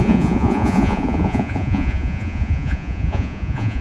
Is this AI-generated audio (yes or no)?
yes